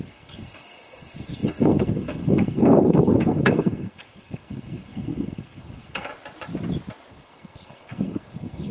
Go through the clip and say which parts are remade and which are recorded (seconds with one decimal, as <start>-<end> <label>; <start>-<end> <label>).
0.0-6.1 remade; 6.1-7.1 recorded; 7.1-8.7 remade